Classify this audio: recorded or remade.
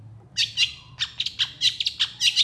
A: recorded